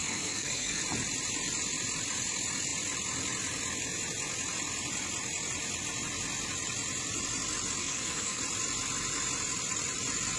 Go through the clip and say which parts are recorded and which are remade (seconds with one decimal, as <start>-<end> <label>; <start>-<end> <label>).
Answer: 0.0-0.8 remade; 0.8-7.8 recorded; 7.8-8.4 remade; 8.4-10.4 recorded